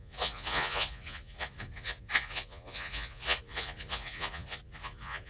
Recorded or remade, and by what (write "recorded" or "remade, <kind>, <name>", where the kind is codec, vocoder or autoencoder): remade, vocoder, Vocos